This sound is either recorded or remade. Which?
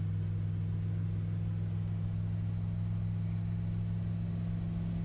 recorded